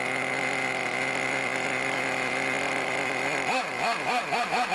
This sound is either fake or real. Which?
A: real